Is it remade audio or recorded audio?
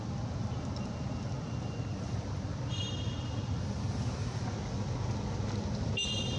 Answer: recorded